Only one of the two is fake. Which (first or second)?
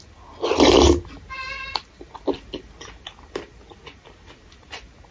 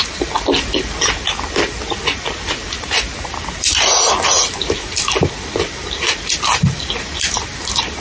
second